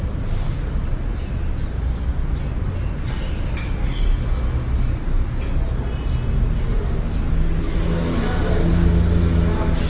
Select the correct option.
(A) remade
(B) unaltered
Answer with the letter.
B